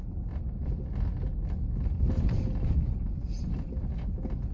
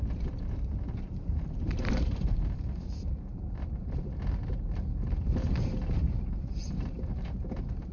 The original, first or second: first